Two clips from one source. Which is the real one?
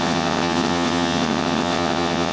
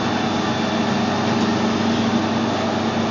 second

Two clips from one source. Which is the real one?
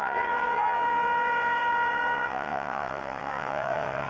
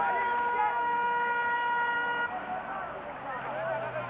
second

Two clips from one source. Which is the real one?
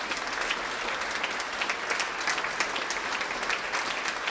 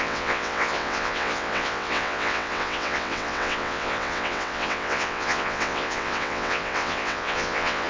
first